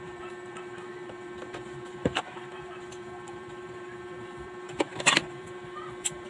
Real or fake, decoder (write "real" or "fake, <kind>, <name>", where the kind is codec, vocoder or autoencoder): fake, vocoder, BigVGAN v2